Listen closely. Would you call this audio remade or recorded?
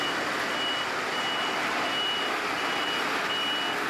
recorded